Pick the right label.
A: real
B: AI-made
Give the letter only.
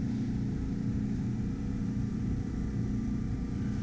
B